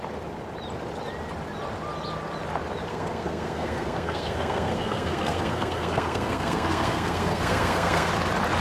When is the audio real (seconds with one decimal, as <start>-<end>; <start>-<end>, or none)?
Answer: 0.0-2.9; 8.1-8.6